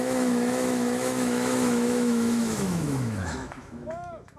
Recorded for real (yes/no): no